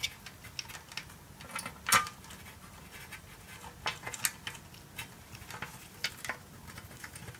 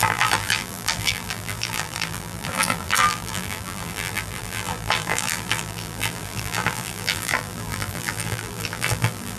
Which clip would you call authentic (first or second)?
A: first